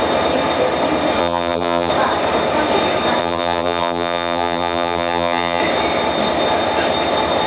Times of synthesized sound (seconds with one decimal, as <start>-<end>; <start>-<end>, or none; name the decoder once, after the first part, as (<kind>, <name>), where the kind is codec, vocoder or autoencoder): 1.2-1.9 (vocoder, BigVGAN v2); 3.2-5.6